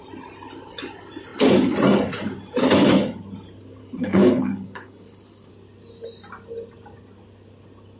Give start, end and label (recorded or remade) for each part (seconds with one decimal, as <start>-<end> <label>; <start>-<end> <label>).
0.0-3.8 recorded; 3.8-5.5 remade; 5.5-8.0 recorded